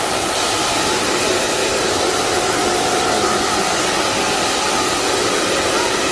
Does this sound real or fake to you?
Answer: real